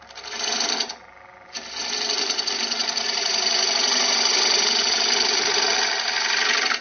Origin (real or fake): real